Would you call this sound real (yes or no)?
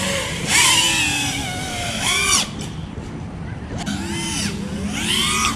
yes